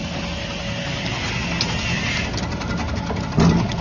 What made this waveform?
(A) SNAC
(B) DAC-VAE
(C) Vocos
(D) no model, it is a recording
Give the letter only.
D